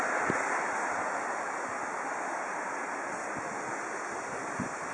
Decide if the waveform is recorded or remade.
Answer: recorded